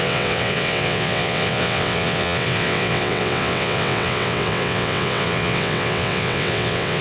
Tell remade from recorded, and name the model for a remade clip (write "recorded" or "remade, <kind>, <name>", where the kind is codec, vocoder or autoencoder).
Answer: remade, vocoder, WaveNeXt